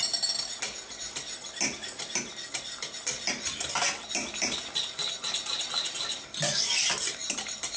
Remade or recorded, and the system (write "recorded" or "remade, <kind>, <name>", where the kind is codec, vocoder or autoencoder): recorded